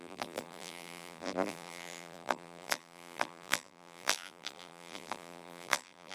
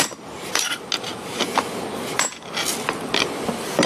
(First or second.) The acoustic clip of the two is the second